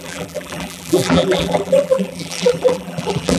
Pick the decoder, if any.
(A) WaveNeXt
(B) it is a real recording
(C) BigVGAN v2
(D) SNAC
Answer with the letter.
C